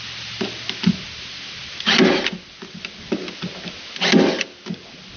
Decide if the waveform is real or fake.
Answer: real